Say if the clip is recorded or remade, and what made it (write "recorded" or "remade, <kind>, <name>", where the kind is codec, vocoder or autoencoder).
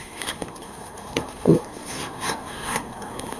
remade, codec, SNAC